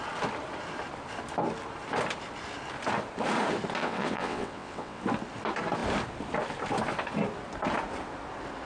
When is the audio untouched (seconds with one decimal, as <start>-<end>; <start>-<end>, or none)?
0.0-3.8; 5.0-8.7